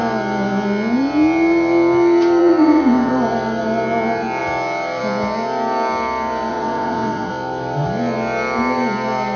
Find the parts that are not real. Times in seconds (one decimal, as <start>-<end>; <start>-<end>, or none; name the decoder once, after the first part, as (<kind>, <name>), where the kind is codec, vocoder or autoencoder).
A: 2.4-3.1 (vocoder, WaveNeXt); 6.5-7.3